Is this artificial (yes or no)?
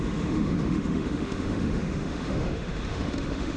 yes